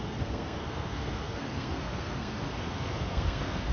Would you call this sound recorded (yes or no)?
no